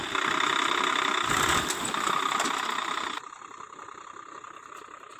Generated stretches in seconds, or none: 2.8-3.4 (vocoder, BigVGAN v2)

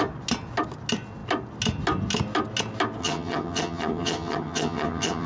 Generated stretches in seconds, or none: 3.0-5.3 (vocoder, HiFi-GAN)

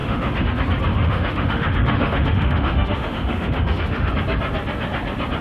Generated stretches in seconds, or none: 0.0-0.5 (autoencoder, DAC-VAE); 0.9-4.1

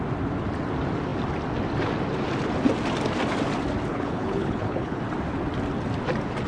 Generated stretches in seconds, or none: 3.9-5.0 (codec, HILCodec)